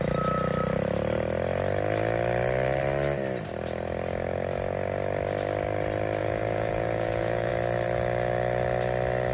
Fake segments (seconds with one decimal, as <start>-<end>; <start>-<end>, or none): 6.2-7.5